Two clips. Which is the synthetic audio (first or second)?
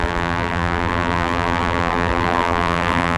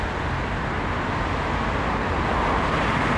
first